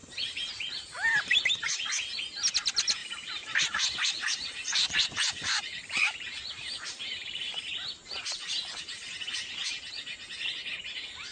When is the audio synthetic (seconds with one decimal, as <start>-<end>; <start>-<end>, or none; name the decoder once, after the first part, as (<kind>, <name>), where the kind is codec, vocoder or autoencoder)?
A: 0.0-1.4 (vocoder, BigVGAN v2); 3.0-7.6